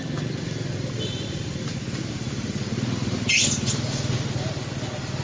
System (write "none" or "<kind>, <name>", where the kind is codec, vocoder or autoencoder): none